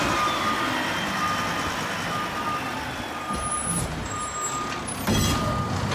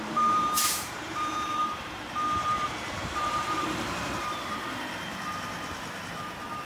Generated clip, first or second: second